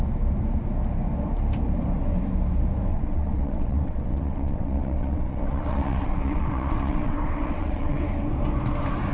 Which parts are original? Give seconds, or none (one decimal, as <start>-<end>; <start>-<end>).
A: 0.0-2.9; 8.0-9.1